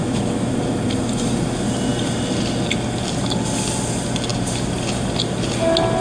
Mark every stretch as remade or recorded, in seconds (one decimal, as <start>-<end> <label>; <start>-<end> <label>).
0.0-0.6 remade; 0.6-6.0 recorded